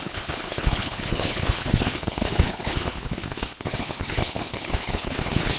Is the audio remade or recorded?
remade